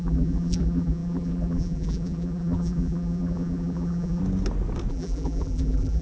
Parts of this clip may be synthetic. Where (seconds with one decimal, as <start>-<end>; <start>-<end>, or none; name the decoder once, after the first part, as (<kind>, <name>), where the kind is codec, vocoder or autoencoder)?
0.0-4.2 (vocoder, BigVGAN v2); 4.9-6.0